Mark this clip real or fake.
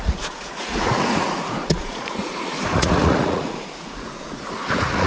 fake